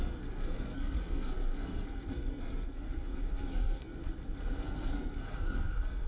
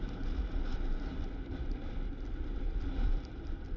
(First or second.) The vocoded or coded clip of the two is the first